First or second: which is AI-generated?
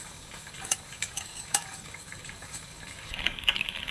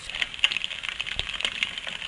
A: first